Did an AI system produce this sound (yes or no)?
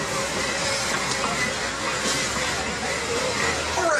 no